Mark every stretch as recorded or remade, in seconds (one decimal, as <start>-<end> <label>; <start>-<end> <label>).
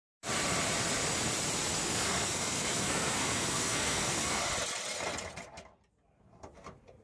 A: 0.0-1.8 recorded; 1.8-4.4 remade; 4.4-7.0 recorded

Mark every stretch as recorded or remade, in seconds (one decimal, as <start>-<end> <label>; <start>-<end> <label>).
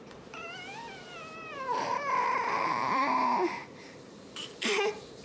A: 0.0-5.2 remade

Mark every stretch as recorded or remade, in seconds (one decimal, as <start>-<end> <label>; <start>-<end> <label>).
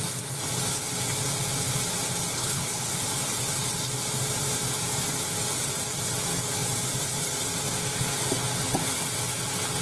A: 0.0-2.3 recorded; 2.3-2.9 remade; 2.9-9.8 recorded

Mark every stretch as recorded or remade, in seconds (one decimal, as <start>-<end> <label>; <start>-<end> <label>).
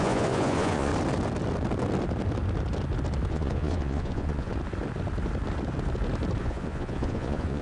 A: 0.0-0.9 remade; 0.9-3.3 recorded; 3.3-4.5 remade; 4.5-6.4 recorded; 6.4-7.6 remade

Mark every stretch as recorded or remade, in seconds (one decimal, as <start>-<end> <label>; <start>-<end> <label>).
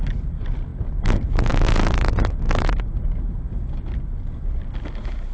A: 0.0-5.3 recorded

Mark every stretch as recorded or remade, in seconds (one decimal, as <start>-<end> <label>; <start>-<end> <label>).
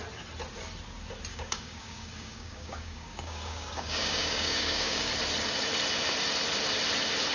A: 0.0-1.3 recorded; 1.3-5.1 remade; 5.1-7.3 recorded